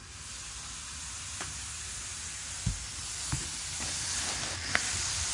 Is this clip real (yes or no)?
yes